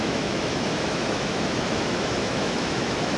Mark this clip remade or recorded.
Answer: remade